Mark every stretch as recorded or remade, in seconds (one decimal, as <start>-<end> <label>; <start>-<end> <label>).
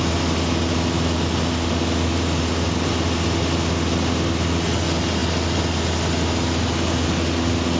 0.0-7.8 recorded